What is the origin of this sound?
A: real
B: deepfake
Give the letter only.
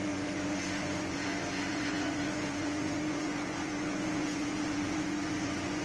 B